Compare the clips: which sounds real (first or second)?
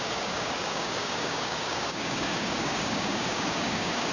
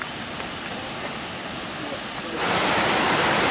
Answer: second